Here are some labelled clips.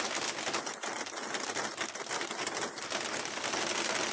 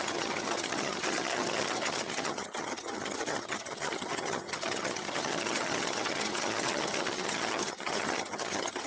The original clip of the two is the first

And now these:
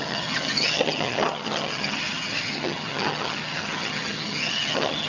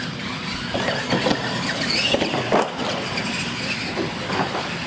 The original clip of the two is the second